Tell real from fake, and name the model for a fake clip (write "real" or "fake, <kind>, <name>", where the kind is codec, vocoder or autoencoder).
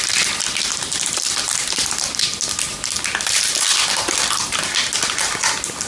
real